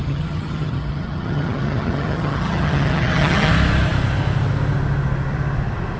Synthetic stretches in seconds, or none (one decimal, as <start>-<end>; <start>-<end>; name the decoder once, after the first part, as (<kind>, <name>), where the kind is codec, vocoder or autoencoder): 0.0-3.5 (vocoder, HiFi-GAN)